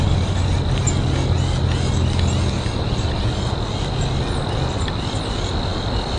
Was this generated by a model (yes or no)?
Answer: no